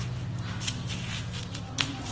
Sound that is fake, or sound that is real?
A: real